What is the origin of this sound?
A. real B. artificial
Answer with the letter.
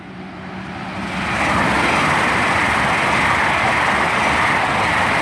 A